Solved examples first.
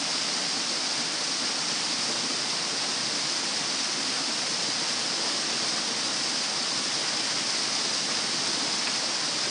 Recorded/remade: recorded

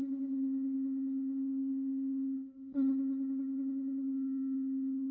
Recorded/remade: remade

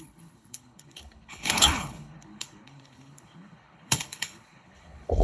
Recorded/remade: remade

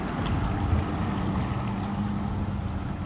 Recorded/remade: recorded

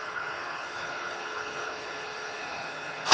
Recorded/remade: remade